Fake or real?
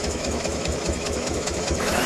fake